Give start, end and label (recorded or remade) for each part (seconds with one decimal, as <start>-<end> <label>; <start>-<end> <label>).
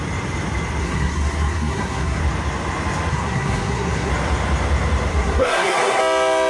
0.0-0.8 recorded; 0.8-2.2 remade; 2.2-3.1 recorded; 3.1-4.1 remade; 4.1-5.1 recorded; 5.1-6.0 remade; 6.0-6.5 recorded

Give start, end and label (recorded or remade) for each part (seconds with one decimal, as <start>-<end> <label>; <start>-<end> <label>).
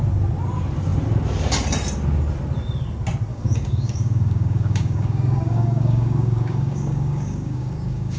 0.0-3.3 recorded; 3.3-8.2 remade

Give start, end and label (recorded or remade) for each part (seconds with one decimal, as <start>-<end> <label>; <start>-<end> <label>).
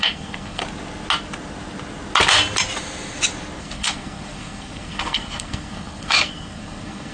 0.0-0.6 remade; 0.6-3.6 recorded; 3.6-7.1 remade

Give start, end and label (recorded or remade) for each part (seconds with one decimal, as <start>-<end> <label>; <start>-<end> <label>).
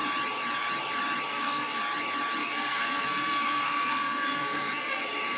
0.0-1.3 recorded; 1.3-1.8 remade; 1.8-2.4 recorded; 2.4-5.0 remade; 5.0-5.4 recorded